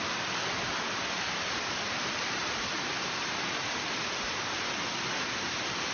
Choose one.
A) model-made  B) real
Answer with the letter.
B